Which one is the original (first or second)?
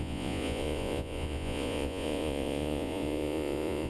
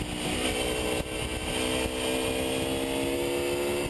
second